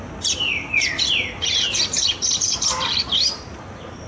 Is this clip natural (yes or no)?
yes